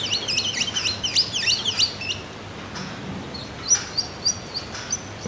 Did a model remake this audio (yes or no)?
no